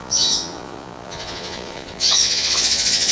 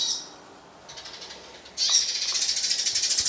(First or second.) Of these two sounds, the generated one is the first